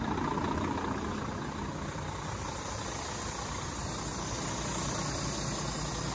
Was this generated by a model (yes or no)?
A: no